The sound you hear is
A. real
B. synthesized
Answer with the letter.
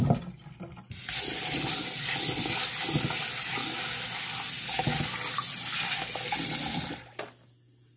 A